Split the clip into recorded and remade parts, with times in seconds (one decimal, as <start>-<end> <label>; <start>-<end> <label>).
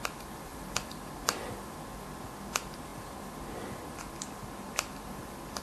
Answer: 0.0-0.5 recorded; 0.5-2.3 remade; 2.3-2.9 recorded; 2.9-4.0 remade; 4.0-5.6 recorded